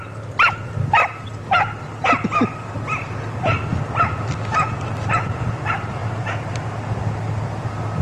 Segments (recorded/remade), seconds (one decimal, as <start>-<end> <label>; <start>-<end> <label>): 0.0-6.0 recorded; 6.0-6.5 remade; 6.5-8.0 recorded